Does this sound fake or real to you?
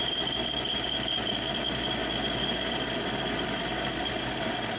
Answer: real